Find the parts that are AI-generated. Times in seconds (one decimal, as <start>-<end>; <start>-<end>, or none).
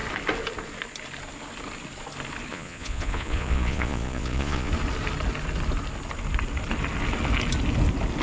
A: 2.5-4.7